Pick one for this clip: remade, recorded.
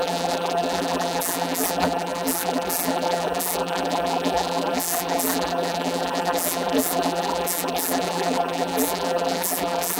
remade